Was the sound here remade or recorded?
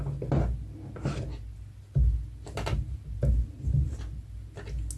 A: recorded